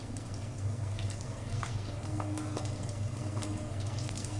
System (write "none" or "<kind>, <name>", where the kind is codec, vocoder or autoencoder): codec, SNAC